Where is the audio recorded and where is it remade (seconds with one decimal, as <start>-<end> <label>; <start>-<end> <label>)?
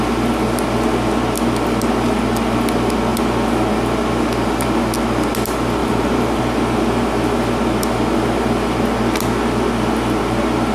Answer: 0.0-5.8 recorded; 5.8-6.4 remade; 6.4-10.7 recorded